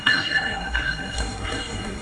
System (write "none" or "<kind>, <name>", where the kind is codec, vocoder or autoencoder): codec, SNAC